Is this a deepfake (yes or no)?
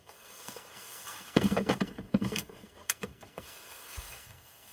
yes